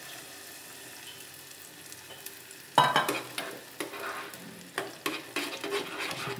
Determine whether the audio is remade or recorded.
recorded